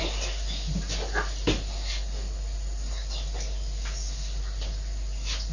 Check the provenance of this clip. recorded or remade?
recorded